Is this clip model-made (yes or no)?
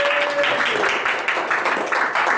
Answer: no